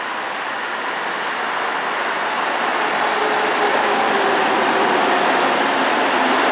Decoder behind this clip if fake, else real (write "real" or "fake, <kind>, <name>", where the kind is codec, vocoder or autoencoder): real